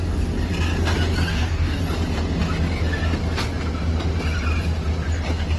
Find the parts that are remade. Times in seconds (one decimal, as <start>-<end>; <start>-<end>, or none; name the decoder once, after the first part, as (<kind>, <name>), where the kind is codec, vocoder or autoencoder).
1.3-1.8 (codec, DAC)